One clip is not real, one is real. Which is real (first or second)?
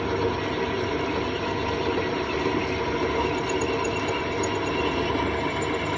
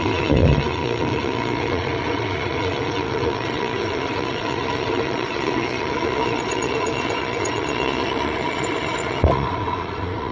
first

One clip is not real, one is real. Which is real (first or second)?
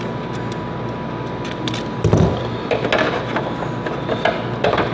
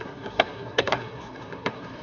first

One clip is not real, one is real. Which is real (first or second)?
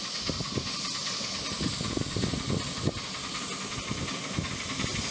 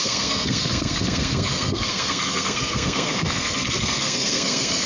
first